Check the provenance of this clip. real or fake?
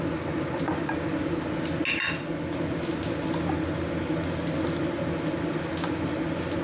real